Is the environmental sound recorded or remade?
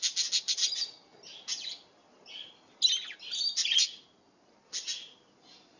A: recorded